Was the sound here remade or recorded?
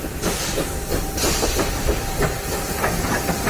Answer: recorded